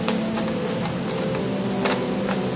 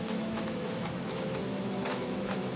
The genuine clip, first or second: first